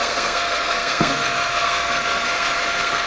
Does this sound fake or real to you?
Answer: fake